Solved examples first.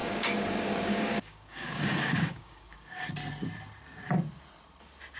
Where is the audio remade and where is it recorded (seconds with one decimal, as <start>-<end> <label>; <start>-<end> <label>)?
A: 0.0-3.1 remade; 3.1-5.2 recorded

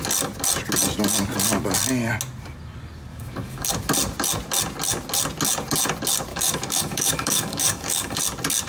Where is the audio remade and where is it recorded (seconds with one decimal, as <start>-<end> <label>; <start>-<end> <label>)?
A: 0.0-3.1 recorded; 3.1-3.7 remade; 3.7-6.3 recorded; 6.3-8.2 remade; 8.2-8.7 recorded

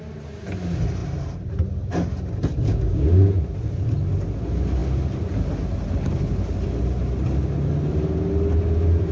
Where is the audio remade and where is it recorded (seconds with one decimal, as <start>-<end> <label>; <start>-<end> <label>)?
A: 0.0-2.7 recorded; 2.7-3.3 remade; 3.3-9.1 recorded

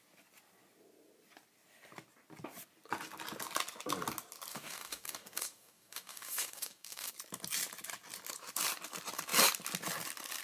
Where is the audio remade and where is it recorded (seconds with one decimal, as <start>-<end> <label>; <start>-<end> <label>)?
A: 0.0-4.5 recorded; 4.5-7.1 remade; 7.1-10.4 recorded

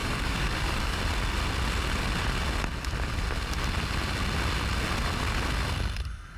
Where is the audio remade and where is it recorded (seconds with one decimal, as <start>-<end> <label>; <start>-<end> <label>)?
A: 0.0-1.0 remade; 1.0-6.4 recorded